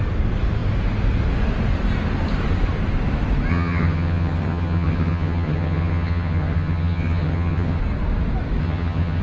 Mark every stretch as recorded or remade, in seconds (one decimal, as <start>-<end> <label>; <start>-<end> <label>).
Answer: 0.0-3.5 recorded; 3.5-7.8 remade; 7.8-8.6 recorded; 8.6-9.2 remade